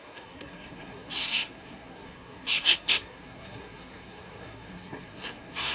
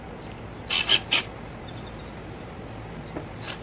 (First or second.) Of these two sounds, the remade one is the first